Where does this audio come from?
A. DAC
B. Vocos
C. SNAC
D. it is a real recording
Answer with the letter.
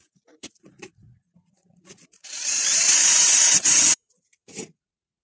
B